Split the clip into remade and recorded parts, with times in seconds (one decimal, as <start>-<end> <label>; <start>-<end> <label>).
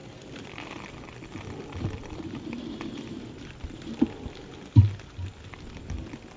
0.0-0.9 remade; 0.9-2.0 recorded; 2.0-4.5 remade; 4.5-6.4 recorded